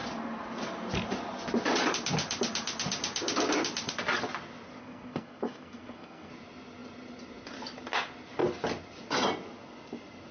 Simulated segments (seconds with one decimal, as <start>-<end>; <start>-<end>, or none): 4.8-6.3